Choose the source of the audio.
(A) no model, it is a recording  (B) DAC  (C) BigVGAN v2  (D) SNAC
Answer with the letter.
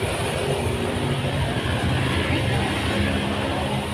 A